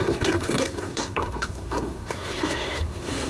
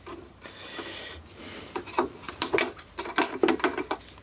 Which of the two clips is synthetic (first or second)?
first